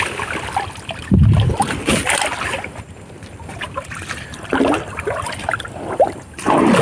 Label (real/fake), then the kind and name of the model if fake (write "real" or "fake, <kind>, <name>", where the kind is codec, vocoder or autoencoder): real